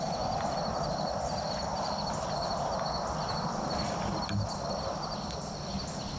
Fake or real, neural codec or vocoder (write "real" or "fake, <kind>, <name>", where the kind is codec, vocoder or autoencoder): real